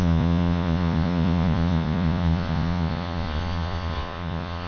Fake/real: fake